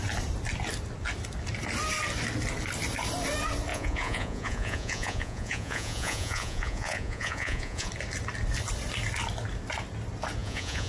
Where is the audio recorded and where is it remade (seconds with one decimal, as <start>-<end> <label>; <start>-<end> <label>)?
0.0-3.7 recorded; 3.7-7.9 remade; 7.9-10.4 recorded; 10.4-10.9 remade